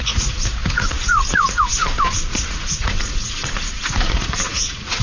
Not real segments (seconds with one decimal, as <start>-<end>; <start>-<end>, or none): 0.0-5.0

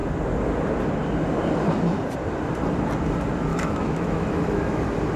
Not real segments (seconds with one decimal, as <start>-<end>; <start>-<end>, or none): 3.5-4.8

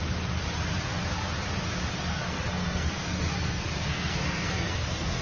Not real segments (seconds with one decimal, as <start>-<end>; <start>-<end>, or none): 2.1-5.2

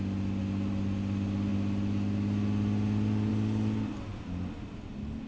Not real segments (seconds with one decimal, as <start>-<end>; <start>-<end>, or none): none

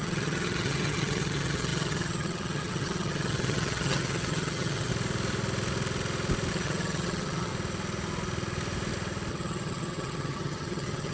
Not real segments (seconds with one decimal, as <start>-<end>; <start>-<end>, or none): 0.0-4.9; 6.5-7.5; 9.3-11.1